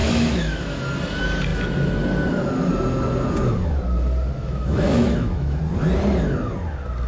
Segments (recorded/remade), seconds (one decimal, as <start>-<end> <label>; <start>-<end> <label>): 0.0-0.8 remade; 0.8-4.4 recorded; 4.4-5.6 remade; 5.6-7.1 recorded